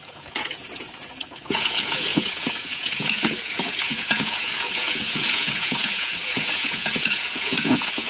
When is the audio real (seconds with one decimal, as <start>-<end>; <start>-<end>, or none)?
none